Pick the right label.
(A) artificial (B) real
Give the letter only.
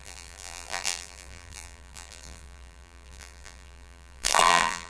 A